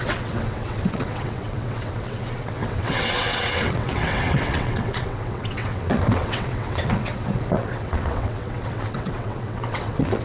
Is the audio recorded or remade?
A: remade